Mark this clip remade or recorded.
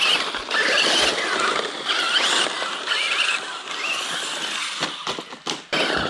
recorded